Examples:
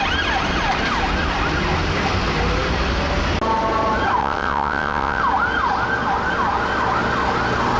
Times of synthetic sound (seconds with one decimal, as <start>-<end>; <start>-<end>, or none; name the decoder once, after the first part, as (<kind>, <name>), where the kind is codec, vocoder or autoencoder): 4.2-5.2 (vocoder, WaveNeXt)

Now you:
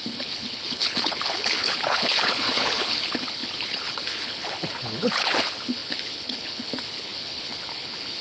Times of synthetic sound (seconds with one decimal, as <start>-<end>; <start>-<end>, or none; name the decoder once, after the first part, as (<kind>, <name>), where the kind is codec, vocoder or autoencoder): 0.0-8.2 (codec, HILCodec)

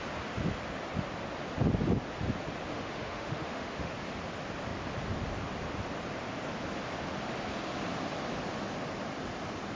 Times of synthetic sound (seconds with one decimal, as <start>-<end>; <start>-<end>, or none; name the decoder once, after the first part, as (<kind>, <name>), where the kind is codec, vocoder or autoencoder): 2.7-3.9 (autoencoder, DAC-VAE)

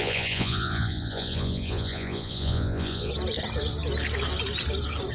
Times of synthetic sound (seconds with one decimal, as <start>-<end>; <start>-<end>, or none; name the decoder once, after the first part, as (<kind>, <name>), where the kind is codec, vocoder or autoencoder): 0.0-3.1 (vocoder, Vocos)

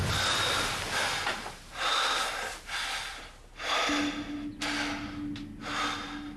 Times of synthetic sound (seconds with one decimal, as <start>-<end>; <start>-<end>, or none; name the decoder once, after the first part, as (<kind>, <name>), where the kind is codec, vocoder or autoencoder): none